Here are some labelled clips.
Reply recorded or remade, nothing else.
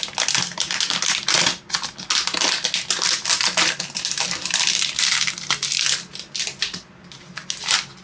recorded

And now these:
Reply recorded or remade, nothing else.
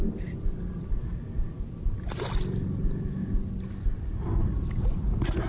recorded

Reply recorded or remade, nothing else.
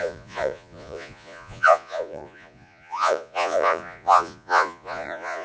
remade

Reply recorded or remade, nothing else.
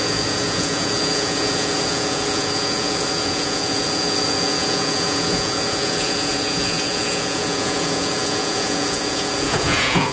remade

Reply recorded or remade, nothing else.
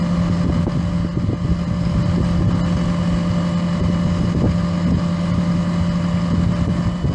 recorded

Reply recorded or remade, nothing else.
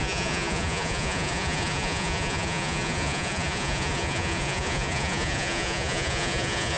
remade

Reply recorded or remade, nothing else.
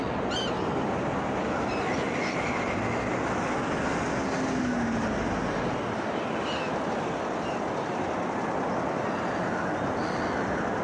recorded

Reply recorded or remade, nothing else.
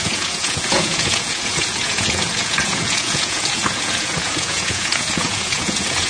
remade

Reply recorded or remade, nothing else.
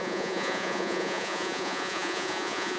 remade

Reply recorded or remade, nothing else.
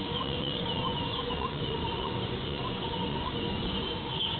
remade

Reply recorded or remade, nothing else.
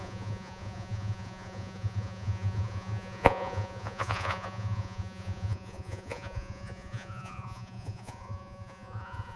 remade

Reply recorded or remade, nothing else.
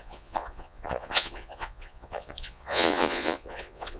remade